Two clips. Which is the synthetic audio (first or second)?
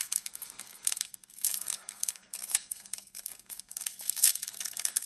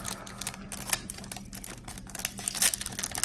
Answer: first